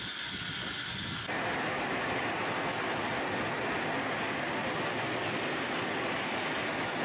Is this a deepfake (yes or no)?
no